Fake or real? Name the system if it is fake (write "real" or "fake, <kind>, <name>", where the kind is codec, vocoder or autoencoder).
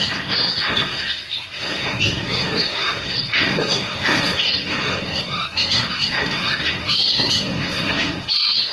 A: fake, codec, SNAC